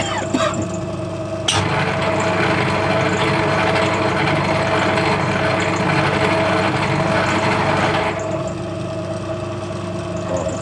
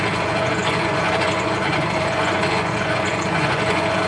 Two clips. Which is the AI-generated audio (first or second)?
second